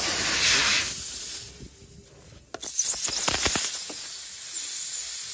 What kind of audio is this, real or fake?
real